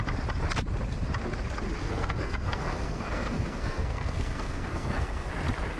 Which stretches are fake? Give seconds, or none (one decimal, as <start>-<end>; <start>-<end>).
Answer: 1.8-5.3